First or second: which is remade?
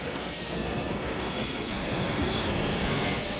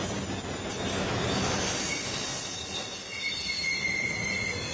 first